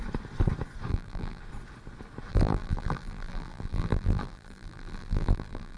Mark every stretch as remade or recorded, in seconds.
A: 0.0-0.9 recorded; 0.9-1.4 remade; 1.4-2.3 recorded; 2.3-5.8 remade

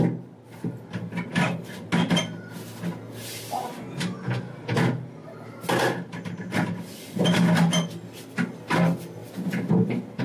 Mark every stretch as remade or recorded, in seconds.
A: 0.0-9.2 recorded; 9.2-10.2 remade

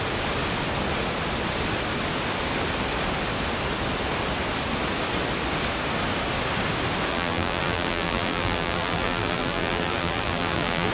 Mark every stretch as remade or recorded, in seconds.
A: 0.0-7.1 recorded; 7.1-10.9 remade